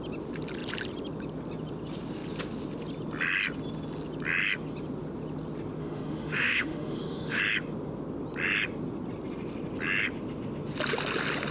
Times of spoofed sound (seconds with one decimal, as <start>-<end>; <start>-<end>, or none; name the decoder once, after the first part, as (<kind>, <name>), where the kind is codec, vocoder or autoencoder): 5.8-7.4 (autoencoder, DAC-VAE)